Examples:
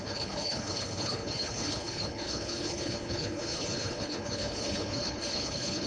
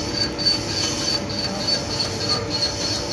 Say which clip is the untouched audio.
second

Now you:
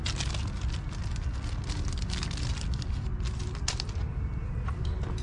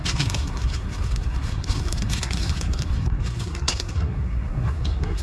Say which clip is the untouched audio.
first